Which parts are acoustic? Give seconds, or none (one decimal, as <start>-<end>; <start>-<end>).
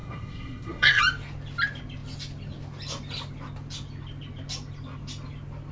1.0-5.7